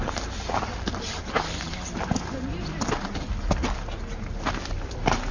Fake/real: real